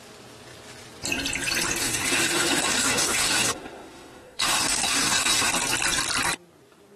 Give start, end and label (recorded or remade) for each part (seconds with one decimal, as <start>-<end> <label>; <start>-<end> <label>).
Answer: 0.0-1.8 recorded; 1.8-5.5 remade; 5.5-7.0 recorded